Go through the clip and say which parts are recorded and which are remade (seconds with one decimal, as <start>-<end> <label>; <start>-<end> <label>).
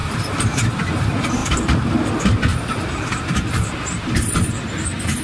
0.0-0.7 remade; 0.7-1.4 recorded; 1.4-2.1 remade; 2.1-2.5 recorded; 2.5-3.2 remade; 3.2-5.2 recorded